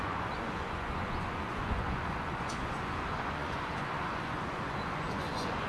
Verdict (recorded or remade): remade